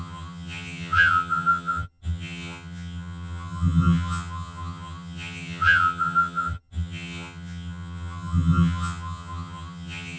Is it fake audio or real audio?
fake